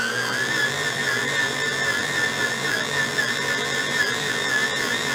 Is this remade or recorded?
remade